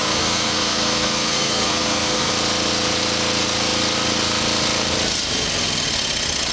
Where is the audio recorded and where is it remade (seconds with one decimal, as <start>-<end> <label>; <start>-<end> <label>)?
0.0-2.3 remade; 2.3-6.5 recorded